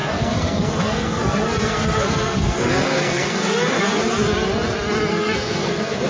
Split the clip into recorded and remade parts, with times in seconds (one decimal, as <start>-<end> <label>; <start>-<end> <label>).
0.0-3.7 remade; 3.7-5.1 recorded; 5.1-6.1 remade